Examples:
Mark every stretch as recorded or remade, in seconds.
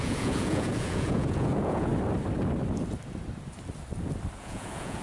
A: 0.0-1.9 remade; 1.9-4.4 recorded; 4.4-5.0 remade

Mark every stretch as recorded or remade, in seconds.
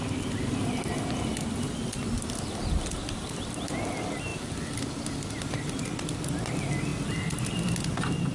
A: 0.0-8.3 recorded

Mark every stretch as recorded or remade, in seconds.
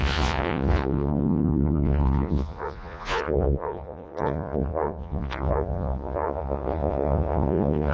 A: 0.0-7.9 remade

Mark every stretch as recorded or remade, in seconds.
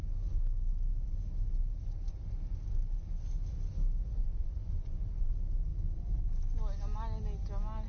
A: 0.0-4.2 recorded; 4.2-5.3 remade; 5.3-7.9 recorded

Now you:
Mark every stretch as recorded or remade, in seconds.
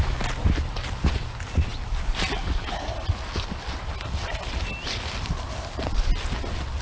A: 0.0-6.8 recorded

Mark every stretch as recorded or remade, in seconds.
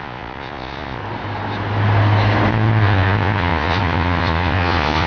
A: 0.0-1.0 remade; 1.0-2.5 recorded; 2.5-5.1 remade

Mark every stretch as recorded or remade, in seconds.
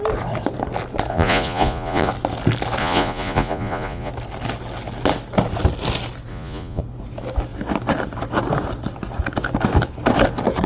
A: 0.0-1.1 recorded; 1.1-2.1 remade; 2.1-2.8 recorded; 2.8-4.1 remade; 4.1-6.3 recorded; 6.3-6.8 remade; 6.8-10.7 recorded